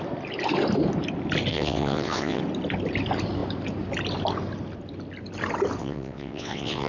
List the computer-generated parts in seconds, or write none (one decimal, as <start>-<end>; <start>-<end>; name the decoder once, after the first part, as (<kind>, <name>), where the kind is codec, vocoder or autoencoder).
1.5-2.4 (vocoder, WaveNeXt); 5.8-6.9